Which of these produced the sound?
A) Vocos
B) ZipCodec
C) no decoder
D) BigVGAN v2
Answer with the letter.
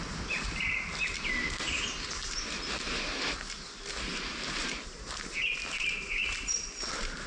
C